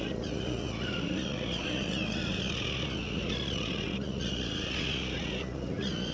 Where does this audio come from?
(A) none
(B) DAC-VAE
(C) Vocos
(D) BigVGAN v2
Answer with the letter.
C